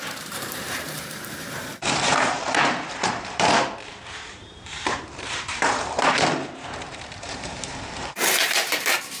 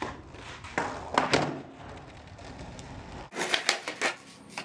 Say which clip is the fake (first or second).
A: first